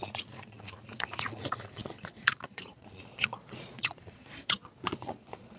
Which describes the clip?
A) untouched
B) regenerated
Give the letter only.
B